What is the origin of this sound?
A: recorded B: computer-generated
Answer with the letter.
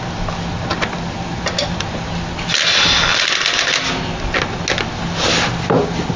A